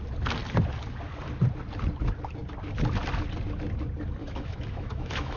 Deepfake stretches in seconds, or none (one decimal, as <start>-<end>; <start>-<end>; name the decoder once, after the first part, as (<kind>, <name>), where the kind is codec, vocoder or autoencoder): 4.2-5.4 (autoencoder, DAC-VAE)